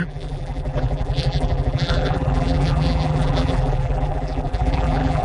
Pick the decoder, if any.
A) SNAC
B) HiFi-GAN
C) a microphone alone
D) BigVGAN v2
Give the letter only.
D